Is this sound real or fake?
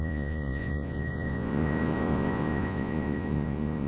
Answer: fake